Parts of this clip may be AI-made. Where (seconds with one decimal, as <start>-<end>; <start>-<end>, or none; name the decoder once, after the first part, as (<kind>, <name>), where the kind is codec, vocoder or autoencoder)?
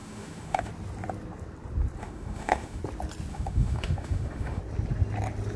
0.0-0.7 (autoencoder, DAC-VAE); 2.0-2.8; 3.3-4.6